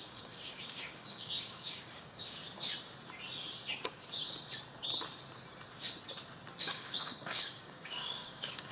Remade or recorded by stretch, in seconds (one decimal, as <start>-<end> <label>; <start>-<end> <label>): 0.0-2.4 remade; 2.4-6.6 recorded; 6.6-8.7 remade